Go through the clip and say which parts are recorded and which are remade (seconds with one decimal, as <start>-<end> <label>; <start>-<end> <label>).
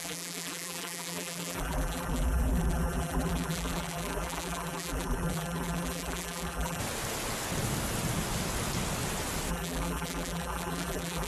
0.0-6.8 remade; 6.8-9.5 recorded; 9.5-11.3 remade